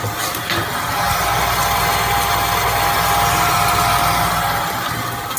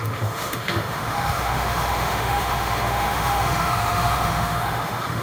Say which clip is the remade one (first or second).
second